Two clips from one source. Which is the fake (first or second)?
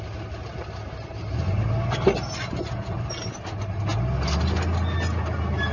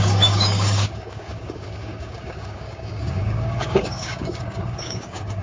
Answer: second